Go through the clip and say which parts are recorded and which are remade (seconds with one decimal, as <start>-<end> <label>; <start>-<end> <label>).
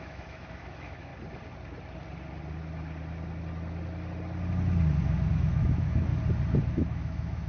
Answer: 0.0-1.1 remade; 1.1-5.3 recorded; 5.3-6.1 remade; 6.1-6.7 recorded; 6.7-7.5 remade